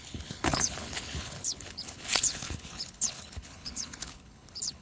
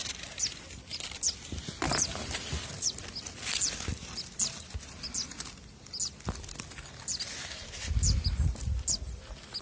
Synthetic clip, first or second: first